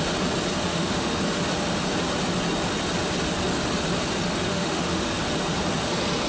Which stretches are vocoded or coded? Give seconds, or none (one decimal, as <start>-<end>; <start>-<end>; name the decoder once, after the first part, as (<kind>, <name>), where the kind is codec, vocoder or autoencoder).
0.7-1.2 (autoencoder, DAC-VAE); 4.5-5.1